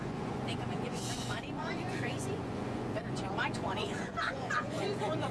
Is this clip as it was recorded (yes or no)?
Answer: no